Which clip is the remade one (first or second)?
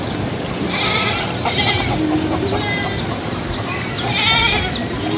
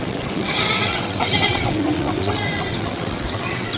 second